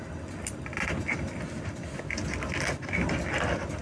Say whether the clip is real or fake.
real